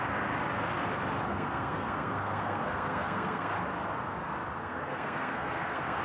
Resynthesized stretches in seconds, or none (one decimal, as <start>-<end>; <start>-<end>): 1.3-3.5; 4.6-6.0